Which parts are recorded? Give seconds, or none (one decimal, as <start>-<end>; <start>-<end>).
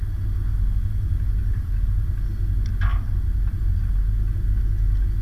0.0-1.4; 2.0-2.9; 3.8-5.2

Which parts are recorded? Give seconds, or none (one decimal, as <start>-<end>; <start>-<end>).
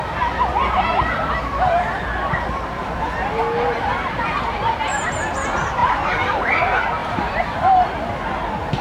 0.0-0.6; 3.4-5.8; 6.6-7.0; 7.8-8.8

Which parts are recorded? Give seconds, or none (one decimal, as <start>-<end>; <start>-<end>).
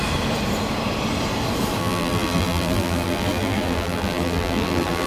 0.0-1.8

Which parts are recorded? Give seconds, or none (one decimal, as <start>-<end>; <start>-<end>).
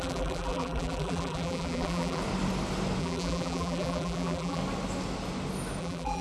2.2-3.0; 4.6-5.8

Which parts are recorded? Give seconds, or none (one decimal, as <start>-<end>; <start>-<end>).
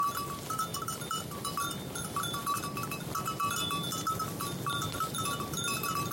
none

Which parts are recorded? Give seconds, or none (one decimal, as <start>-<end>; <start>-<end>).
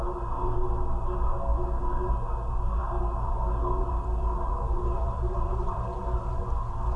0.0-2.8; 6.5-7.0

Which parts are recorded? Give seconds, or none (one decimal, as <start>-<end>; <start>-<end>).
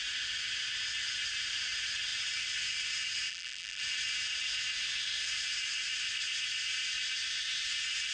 0.0-3.3; 3.8-8.1